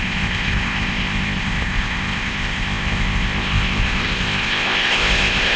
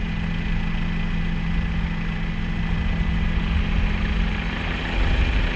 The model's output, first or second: first